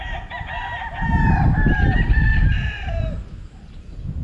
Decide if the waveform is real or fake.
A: real